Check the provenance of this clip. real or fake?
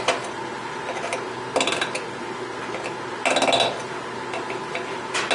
real